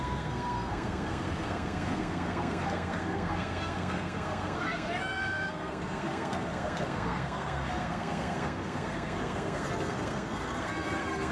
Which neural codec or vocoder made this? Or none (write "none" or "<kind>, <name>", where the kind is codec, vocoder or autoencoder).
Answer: codec, SNAC